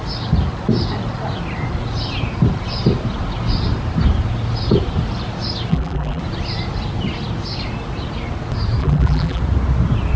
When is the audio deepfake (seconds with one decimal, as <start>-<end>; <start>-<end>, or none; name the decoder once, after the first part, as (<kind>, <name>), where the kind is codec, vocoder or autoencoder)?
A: 5.7-6.2 (vocoder, BigVGAN v2); 8.8-9.4